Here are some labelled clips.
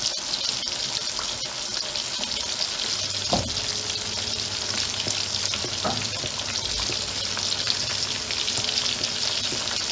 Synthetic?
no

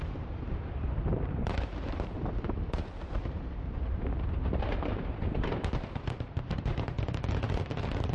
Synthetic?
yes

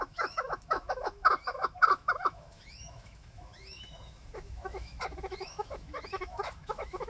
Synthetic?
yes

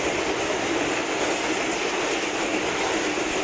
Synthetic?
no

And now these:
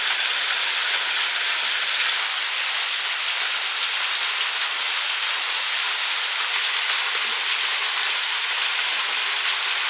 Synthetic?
no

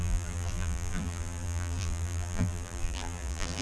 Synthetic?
yes